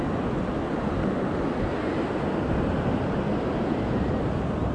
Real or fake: real